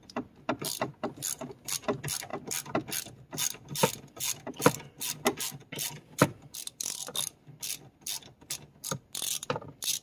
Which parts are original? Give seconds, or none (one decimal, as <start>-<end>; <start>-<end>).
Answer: 0.0-10.0